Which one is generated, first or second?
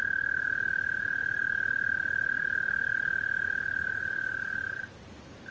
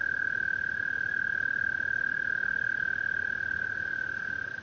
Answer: first